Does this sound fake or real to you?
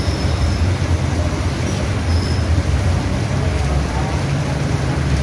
fake